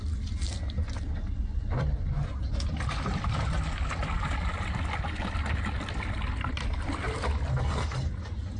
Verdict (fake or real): real